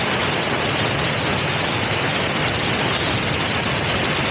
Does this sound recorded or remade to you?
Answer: recorded